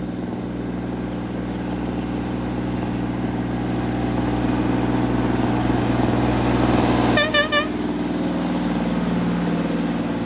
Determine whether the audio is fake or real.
real